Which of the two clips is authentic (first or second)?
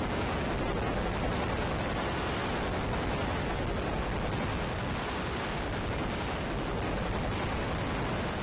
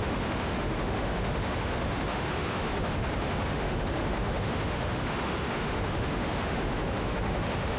first